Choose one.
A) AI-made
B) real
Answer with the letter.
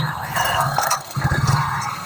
A